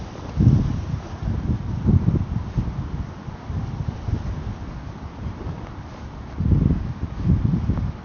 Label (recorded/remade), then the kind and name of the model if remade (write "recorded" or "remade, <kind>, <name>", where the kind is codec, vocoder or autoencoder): recorded